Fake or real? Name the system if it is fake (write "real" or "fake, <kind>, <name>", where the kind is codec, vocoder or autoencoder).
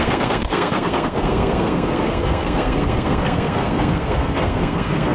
fake, codec, SNAC